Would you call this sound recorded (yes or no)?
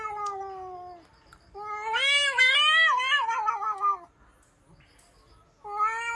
yes